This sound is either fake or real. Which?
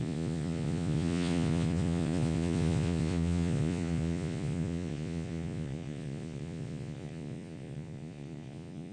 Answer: fake